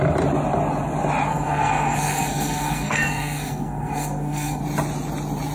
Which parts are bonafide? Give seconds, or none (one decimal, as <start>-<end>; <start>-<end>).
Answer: 0.0-1.3; 4.6-5.5